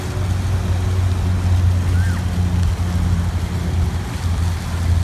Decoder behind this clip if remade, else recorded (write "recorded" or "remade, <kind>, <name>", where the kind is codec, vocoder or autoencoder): recorded